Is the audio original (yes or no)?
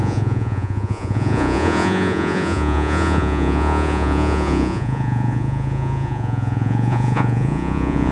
no